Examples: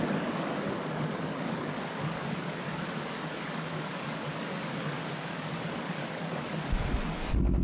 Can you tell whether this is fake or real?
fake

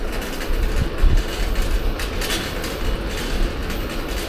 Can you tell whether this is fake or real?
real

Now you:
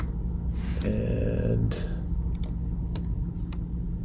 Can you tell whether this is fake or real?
real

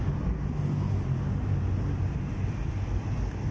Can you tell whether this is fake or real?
real